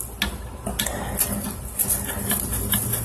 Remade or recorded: recorded